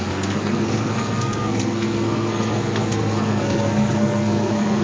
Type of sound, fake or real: fake